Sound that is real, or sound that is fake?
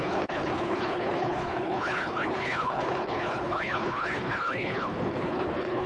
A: fake